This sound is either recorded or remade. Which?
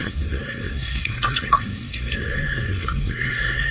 remade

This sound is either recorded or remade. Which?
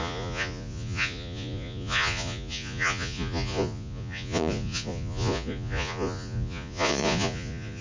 remade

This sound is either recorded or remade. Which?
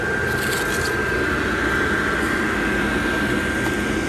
recorded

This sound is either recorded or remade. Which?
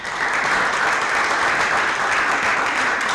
recorded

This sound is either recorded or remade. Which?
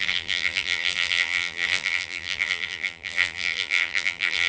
remade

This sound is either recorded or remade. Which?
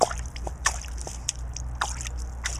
recorded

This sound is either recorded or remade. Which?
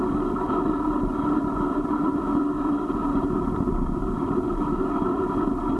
remade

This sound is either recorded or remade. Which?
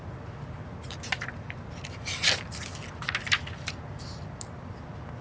recorded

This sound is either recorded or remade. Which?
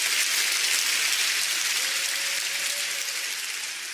recorded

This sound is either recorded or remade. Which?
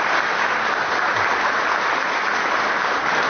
recorded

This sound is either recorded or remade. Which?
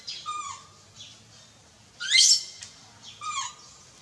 recorded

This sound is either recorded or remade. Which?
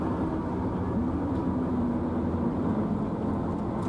recorded